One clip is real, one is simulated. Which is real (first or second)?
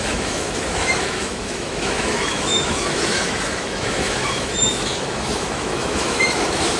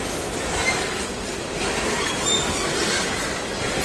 second